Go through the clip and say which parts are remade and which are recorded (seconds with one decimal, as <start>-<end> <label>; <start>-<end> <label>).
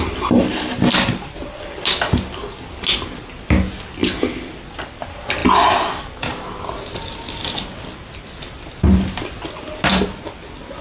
0.0-10.8 recorded